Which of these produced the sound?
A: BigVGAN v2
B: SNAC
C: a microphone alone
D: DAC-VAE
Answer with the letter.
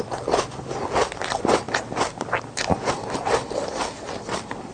C